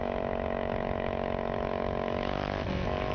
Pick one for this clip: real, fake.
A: fake